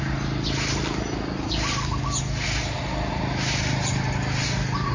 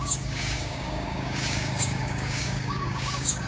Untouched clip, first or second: first